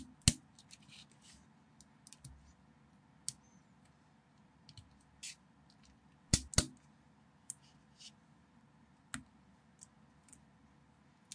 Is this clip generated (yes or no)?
no